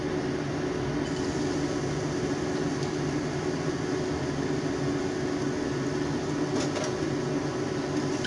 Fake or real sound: real